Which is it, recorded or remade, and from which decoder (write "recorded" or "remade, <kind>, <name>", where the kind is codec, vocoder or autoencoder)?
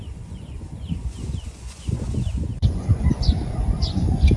remade, vocoder, Vocos